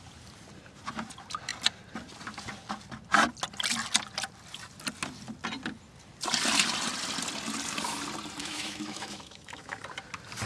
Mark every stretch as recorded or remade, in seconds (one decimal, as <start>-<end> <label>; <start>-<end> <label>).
0.0-8.4 recorded; 8.4-9.8 remade; 9.8-10.5 recorded